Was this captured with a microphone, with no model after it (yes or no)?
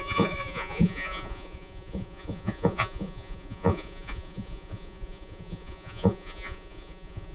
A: no